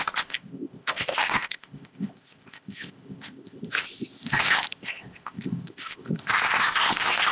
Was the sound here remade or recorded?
remade